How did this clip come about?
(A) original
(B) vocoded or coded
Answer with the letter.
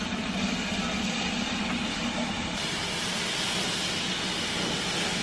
A